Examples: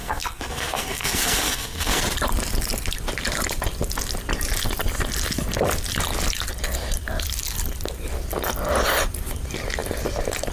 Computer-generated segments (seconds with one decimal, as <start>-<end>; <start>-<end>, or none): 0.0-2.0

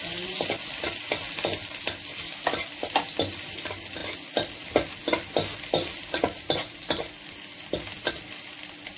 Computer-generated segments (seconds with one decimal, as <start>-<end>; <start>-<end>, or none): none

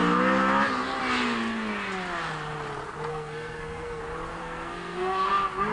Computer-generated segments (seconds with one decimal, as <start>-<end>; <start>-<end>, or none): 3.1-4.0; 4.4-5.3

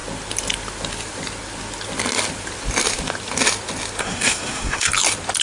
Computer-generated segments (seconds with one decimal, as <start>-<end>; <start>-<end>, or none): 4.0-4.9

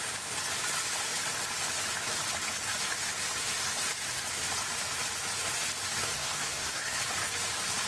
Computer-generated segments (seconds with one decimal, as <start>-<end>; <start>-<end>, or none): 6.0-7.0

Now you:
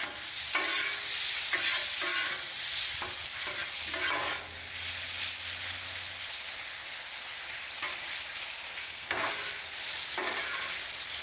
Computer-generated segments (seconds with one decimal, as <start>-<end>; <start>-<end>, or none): 8.8-9.3

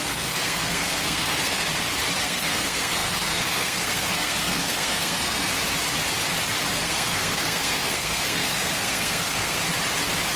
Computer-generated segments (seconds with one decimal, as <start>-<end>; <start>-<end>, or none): 0.0-1.7; 2.2-5.5; 6.7-9.6

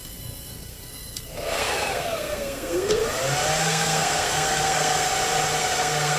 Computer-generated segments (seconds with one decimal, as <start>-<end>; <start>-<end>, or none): 0.0-3.0; 3.6-5.1; 5.6-6.2